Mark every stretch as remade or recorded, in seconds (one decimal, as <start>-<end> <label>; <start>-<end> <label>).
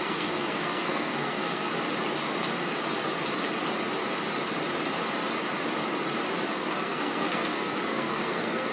0.0-1.7 remade; 1.7-6.5 recorded; 6.5-8.7 remade